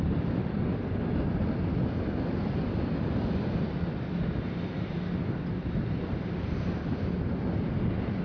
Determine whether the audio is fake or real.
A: real